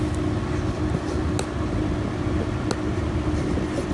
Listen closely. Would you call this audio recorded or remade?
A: recorded